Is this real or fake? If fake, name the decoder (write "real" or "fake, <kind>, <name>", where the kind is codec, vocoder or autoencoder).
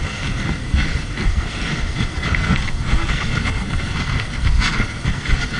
fake, codec, SNAC